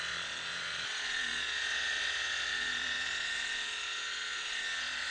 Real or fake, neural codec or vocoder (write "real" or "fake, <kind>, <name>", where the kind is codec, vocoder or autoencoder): fake, vocoder, Vocos